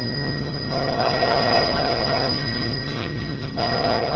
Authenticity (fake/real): fake